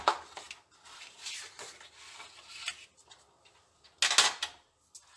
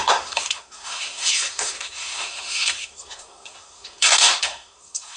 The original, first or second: first